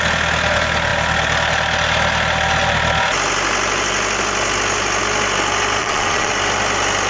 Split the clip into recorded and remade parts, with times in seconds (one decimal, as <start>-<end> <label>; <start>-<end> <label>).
0.0-5.8 recorded; 5.8-6.3 remade; 6.3-7.1 recorded